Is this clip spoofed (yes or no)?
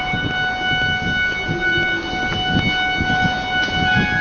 no